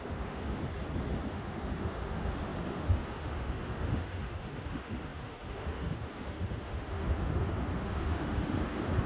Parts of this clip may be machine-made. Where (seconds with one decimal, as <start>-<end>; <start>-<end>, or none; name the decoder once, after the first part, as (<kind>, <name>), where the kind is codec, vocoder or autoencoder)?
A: 0.0-0.6 (autoencoder, DAC-VAE); 1.3-9.1